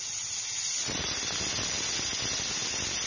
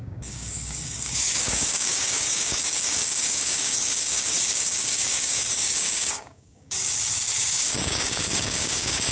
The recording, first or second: first